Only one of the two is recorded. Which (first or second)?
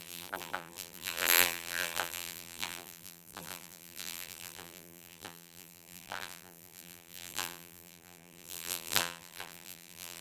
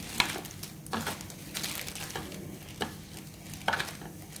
second